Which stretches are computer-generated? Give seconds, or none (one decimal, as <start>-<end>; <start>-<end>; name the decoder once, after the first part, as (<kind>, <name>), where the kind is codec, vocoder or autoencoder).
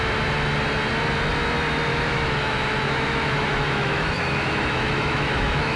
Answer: 1.9-5.8 (autoencoder, DAC-VAE)